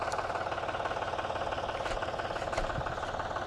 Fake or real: real